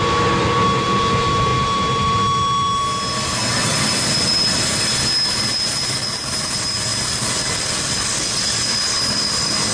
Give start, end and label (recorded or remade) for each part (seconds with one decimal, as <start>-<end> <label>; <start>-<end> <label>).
0.0-9.7 recorded